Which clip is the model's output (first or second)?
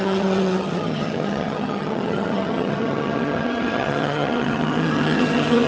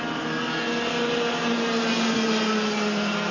first